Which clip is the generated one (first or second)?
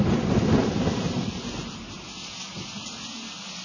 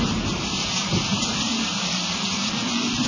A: second